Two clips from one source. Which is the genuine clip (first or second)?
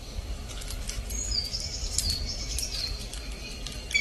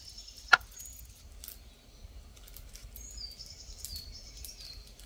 second